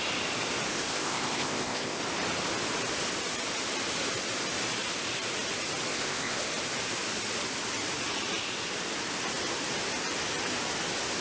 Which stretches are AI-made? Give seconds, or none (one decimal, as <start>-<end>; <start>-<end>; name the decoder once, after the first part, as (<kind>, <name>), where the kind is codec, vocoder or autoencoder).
0.7-2.0 (codec, ZipCodec); 5.9-6.5